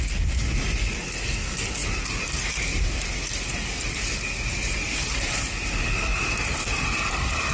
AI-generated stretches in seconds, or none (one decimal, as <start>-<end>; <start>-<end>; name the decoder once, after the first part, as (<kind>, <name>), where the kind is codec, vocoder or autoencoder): 1.8-2.6 (vocoder, BigVGAN v2); 4.6-5.5; 6.1-7.5